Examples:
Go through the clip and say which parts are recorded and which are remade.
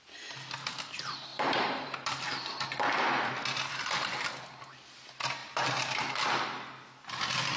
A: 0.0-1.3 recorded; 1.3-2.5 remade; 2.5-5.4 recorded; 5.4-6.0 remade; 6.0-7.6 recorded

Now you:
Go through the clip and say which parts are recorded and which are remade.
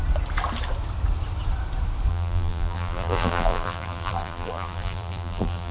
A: 0.0-2.1 recorded; 2.1-5.7 remade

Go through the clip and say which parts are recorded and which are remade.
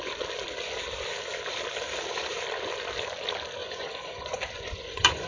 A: 0.0-3.6 recorded; 3.6-5.3 remade